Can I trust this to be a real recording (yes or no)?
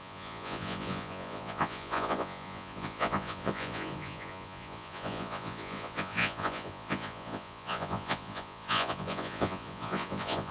no